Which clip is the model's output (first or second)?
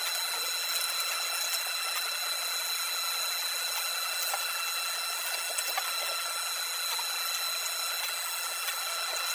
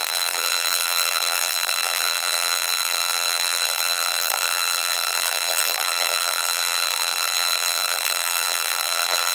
second